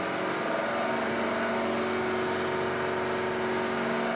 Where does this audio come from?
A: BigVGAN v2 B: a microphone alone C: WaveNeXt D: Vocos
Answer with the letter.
B